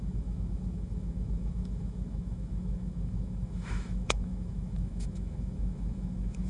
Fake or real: fake